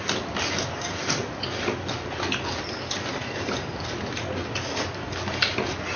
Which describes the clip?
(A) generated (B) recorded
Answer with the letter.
B